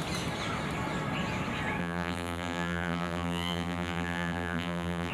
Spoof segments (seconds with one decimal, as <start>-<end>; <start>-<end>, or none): 1.8-5.1

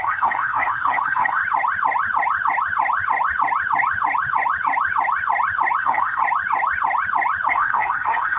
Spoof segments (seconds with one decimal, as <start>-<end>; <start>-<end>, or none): 0.0-1.4; 5.8-6.2; 7.5-8.4

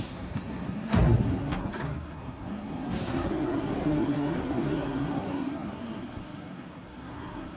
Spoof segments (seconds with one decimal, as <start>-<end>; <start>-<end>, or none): 0.0-7.6

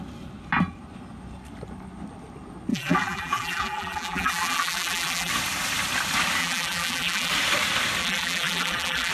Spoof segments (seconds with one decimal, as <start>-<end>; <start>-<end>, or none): 2.7-5.3; 6.4-7.3; 8.0-9.1